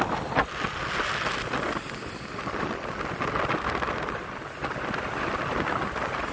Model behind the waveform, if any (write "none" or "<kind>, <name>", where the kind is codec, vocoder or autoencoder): none